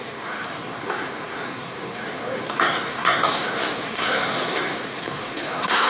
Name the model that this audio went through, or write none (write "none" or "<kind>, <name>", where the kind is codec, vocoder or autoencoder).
codec, SNAC